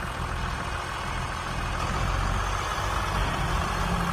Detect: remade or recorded recorded